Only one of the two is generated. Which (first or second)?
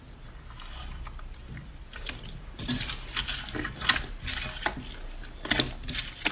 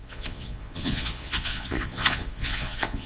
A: second